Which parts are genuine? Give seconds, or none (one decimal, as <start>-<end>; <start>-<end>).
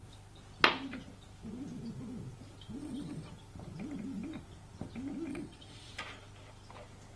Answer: 0.0-2.8; 3.3-5.3; 5.9-7.2